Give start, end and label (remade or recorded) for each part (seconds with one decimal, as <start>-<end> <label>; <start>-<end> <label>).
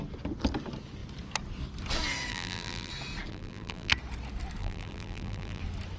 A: 0.0-2.3 recorded; 2.3-2.9 remade; 2.9-3.3 recorded; 3.3-3.9 remade; 3.9-4.6 recorded; 4.6-5.6 remade; 5.6-6.0 recorded